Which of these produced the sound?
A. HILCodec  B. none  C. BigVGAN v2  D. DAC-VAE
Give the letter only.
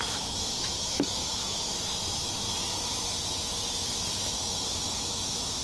D